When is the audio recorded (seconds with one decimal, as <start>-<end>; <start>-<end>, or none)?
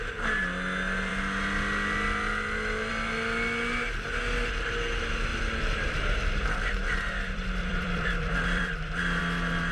0.0-5.3; 9.2-9.7